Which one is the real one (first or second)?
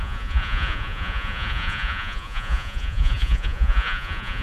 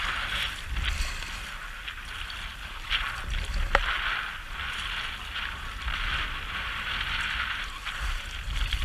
second